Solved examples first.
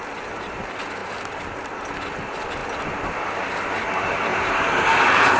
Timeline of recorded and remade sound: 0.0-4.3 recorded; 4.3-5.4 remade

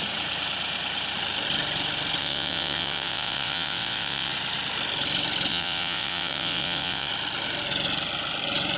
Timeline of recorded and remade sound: 0.0-2.2 recorded; 2.2-4.3 remade; 4.3-5.5 recorded; 5.5-7.1 remade; 7.1-8.8 recorded

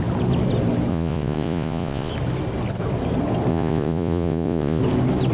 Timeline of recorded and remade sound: 0.0-0.9 recorded; 0.9-2.1 remade; 2.1-3.5 recorded; 3.5-4.8 remade; 4.8-5.3 recorded

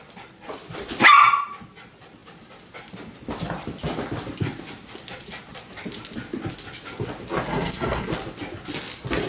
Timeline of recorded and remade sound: 0.0-7.5 recorded; 7.5-8.1 remade; 8.1-9.3 recorded

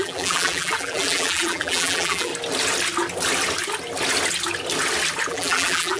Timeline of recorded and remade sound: 0.0-2.3 remade; 2.3-5.3 recorded; 5.3-6.0 remade